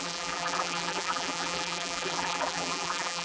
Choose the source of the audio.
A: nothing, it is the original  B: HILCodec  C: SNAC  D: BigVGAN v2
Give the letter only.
D